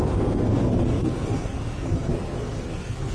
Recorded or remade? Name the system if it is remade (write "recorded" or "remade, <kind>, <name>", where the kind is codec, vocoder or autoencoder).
remade, codec, SNAC